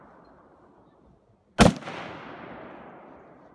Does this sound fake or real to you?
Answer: real